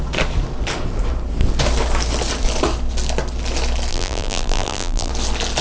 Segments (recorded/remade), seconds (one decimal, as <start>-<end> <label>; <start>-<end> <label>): 0.0-3.9 recorded; 3.9-5.1 remade; 5.1-5.6 recorded